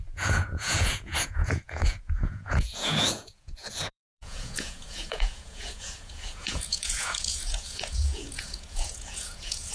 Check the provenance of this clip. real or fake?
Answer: fake